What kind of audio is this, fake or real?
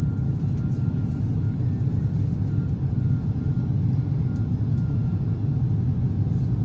real